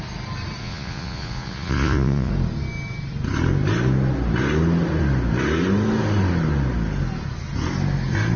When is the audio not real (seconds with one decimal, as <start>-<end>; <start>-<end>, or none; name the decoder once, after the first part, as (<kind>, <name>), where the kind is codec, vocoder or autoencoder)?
0.6-2.3 (vocoder, Vocos)